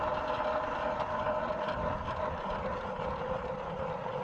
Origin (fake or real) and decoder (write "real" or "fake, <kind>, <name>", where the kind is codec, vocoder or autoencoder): real